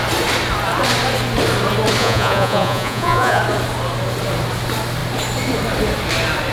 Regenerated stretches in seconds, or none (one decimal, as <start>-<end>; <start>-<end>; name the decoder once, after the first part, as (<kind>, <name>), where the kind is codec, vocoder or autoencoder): 2.0-3.4 (vocoder, Vocos)